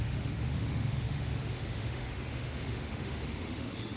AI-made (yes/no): yes